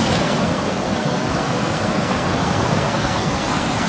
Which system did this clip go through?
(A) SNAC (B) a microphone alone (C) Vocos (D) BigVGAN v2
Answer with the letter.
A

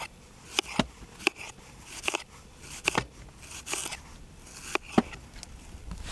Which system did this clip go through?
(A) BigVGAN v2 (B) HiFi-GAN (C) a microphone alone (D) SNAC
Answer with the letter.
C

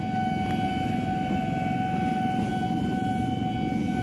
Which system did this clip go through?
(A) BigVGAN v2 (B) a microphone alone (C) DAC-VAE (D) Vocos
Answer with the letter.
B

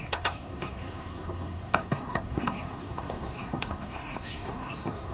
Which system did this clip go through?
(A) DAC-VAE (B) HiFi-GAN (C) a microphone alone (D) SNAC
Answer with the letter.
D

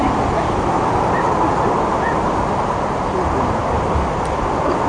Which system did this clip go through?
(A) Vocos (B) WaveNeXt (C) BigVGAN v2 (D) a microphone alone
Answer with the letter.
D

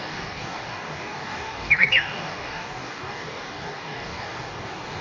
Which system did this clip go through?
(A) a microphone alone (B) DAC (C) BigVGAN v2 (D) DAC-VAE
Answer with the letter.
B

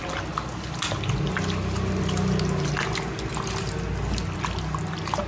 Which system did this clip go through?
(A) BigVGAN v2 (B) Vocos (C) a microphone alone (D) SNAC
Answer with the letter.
C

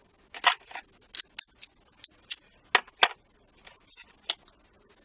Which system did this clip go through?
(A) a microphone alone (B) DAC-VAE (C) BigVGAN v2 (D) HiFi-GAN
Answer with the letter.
A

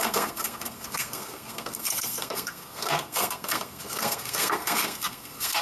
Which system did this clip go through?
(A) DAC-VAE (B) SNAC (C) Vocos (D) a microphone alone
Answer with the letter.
B